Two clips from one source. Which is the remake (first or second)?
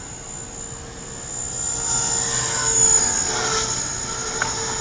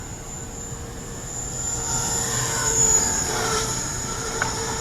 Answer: second